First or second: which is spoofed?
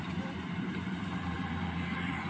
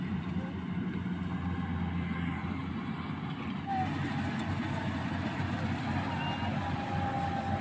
first